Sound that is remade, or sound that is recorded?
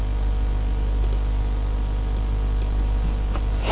recorded